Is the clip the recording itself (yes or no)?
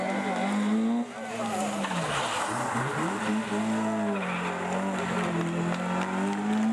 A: yes